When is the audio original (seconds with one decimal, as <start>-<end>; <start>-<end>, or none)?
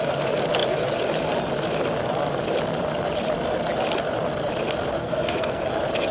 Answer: 0.0-5.0; 5.6-6.1